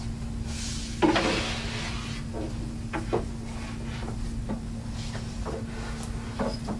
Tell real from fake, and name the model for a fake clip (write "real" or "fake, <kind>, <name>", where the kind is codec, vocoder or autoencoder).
real